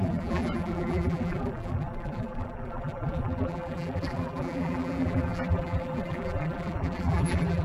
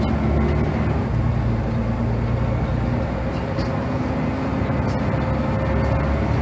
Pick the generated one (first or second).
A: first